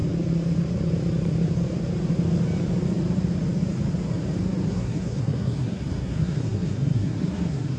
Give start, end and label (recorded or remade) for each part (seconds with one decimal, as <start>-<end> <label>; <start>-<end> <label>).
0.0-4.7 recorded; 4.7-7.8 remade